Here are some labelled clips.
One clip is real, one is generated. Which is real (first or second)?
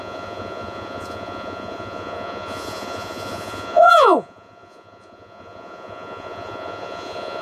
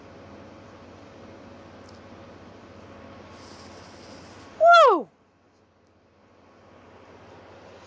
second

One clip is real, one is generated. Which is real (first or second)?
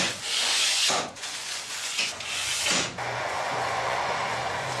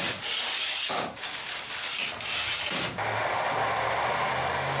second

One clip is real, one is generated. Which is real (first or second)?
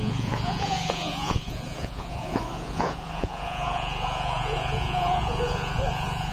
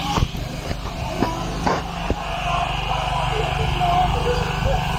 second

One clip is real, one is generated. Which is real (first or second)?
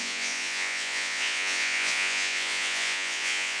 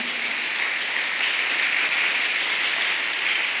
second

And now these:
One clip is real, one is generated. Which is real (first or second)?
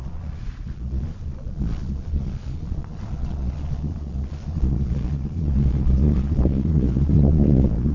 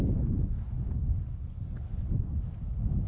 second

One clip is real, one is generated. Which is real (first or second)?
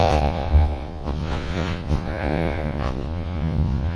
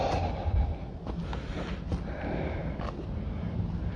second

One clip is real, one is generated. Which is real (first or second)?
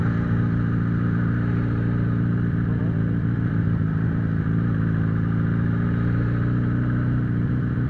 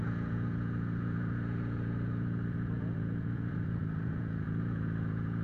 first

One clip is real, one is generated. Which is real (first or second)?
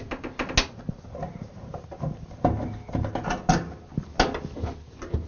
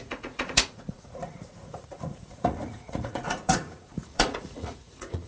first